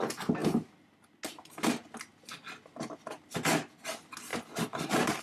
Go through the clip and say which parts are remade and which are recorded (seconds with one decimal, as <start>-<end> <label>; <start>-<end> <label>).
0.0-4.3 recorded; 4.3-5.2 remade